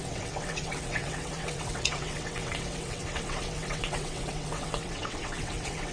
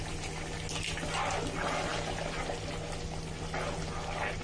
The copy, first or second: first